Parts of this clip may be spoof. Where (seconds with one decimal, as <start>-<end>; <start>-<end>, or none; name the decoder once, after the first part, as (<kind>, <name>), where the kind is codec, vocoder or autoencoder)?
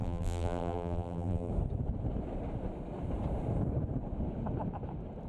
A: 0.0-1.5 (vocoder, BigVGAN v2)